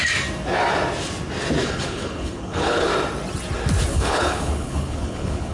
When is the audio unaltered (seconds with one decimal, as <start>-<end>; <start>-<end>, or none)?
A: 0.0-1.6; 2.9-3.9